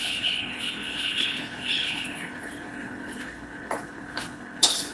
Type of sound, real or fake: fake